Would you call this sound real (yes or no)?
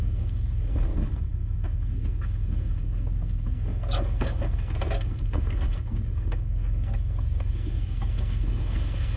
no